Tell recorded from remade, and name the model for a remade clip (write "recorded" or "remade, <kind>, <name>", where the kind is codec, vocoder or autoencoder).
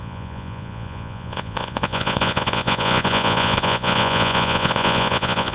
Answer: remade, vocoder, Vocos